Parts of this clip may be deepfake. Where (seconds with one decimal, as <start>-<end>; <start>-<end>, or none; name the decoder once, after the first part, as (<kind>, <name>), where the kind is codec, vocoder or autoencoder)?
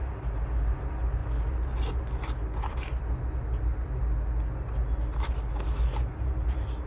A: none